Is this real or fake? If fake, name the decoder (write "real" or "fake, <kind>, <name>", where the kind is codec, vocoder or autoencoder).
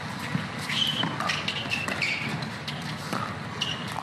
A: real